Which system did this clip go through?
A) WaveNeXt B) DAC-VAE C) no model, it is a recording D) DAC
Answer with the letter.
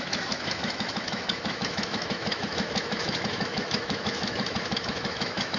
B